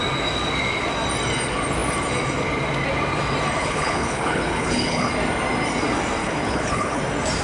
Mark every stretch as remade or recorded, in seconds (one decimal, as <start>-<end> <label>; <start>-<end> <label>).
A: 0.0-3.6 recorded; 3.6-5.1 remade; 5.1-6.2 recorded; 6.2-7.0 remade; 7.0-7.4 recorded